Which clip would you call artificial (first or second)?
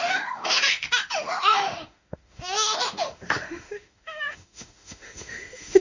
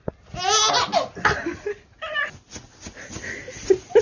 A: first